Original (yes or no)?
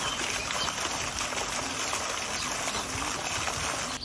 yes